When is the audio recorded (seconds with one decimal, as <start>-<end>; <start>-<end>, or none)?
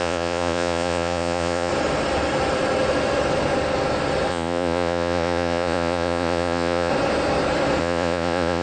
1.7-4.3; 6.9-7.8